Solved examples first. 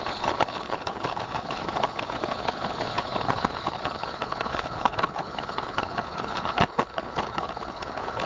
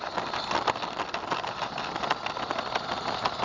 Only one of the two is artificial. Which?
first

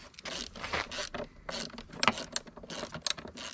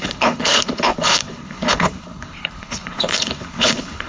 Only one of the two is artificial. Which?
second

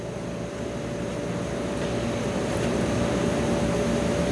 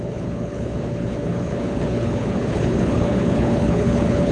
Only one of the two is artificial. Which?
second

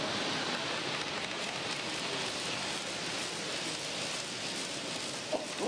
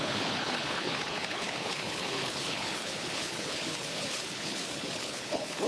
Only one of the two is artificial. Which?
second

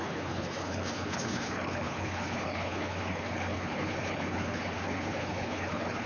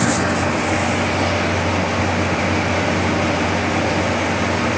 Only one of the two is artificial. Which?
first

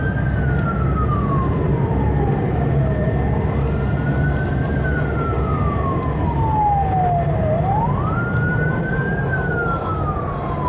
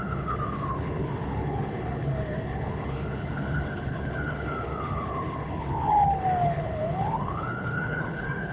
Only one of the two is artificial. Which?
second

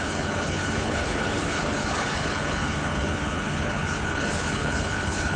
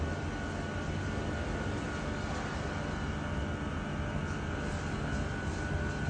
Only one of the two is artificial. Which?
first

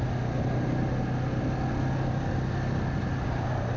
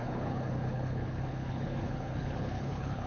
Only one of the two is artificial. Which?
second